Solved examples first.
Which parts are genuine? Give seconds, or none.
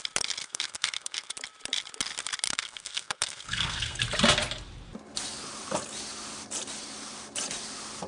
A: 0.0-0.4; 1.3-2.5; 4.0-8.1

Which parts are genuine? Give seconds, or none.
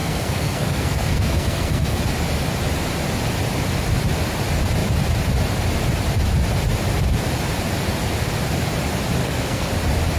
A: 2.0-9.2; 9.7-10.2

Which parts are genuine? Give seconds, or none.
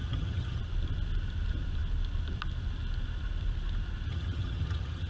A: 0.6-4.1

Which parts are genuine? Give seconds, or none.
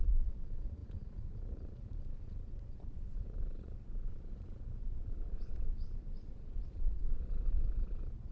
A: none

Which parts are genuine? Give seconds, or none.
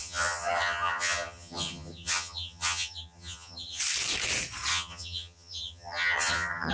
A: 3.8-4.7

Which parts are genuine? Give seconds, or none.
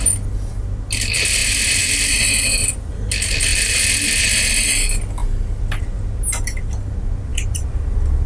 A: 0.0-1.4; 2.7-7.3; 7.8-8.3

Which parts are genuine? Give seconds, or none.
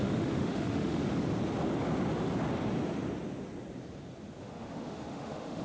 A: 1.0-4.4